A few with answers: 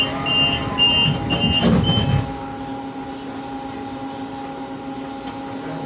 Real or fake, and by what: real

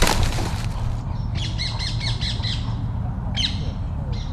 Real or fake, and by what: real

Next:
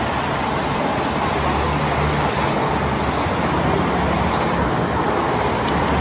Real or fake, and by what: real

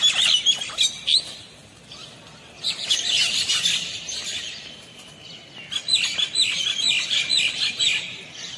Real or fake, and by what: real